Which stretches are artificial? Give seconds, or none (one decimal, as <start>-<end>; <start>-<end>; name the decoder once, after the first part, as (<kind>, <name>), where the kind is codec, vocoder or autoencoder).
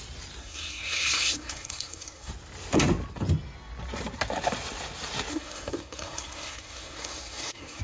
0.4-2.3 (codec, SNAC); 5.3-7.8